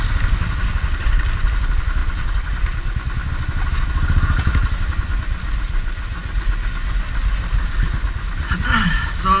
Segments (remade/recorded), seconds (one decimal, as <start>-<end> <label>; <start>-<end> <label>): 0.0-9.4 recorded